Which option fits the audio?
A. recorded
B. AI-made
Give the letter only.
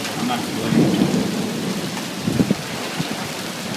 B